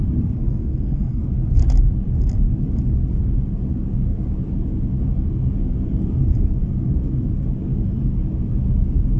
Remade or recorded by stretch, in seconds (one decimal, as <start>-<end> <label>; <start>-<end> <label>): 0.0-0.4 recorded; 0.4-1.2 remade; 1.2-9.2 recorded